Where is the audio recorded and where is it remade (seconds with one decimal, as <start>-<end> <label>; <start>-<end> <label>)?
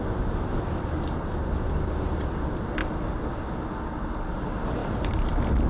0.0-4.8 recorded; 4.8-5.3 remade; 5.3-5.7 recorded